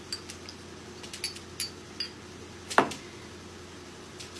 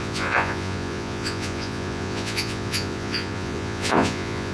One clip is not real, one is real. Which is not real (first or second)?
second